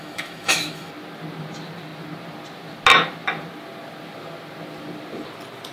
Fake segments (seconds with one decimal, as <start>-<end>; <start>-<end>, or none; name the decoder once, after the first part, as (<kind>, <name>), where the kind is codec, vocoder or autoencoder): 0.0-0.9 (autoencoder, DAC-VAE)

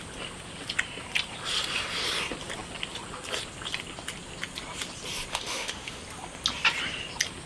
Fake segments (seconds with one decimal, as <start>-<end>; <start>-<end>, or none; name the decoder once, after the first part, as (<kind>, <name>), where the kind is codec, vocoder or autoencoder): 5.3-6.0 (autoencoder, DAC-VAE)

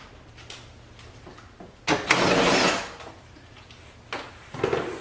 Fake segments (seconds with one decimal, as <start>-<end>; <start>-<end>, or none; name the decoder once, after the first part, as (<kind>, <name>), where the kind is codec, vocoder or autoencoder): none

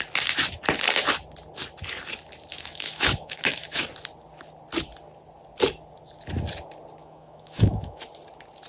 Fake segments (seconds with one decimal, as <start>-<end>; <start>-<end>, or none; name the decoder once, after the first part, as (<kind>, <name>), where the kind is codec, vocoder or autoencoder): 2.5-3.8 (autoencoder, DAC-VAE); 7.0-8.0